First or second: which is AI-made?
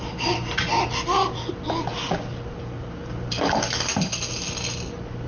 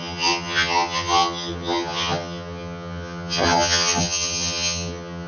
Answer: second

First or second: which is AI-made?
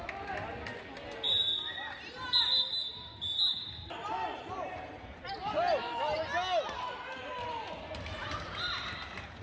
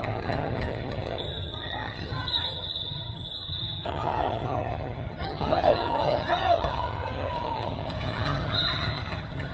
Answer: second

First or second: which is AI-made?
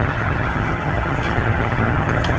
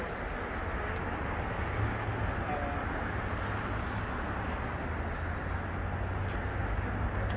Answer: first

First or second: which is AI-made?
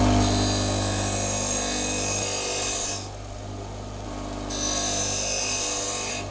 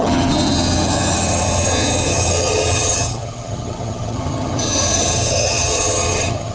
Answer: second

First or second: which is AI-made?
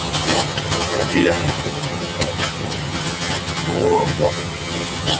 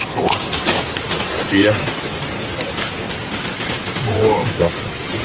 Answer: first